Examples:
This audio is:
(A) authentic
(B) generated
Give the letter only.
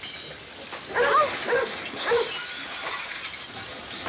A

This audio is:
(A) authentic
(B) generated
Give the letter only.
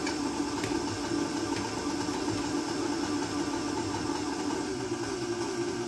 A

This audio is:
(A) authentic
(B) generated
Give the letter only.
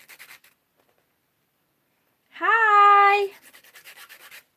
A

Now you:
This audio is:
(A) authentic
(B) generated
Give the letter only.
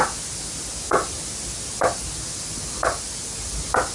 A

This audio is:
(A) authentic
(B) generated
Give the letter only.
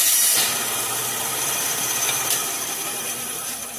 A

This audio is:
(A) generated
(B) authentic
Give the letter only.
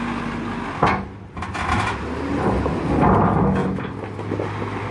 B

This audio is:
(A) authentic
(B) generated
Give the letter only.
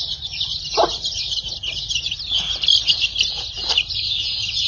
A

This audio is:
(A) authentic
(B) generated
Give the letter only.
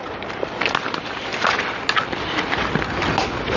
A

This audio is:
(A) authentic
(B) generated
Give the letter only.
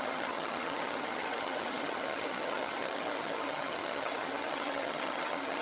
B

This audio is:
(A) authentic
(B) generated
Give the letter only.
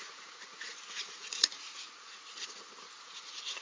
B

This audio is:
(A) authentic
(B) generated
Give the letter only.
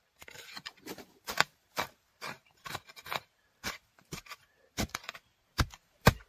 B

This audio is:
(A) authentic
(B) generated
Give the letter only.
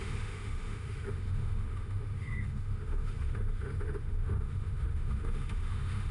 B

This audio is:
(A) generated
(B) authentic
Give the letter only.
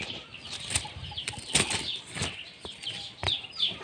B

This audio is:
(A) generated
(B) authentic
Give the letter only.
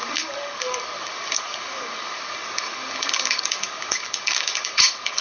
A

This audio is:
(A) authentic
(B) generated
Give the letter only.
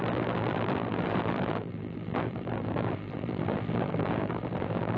B